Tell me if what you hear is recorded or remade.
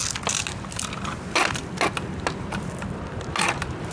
recorded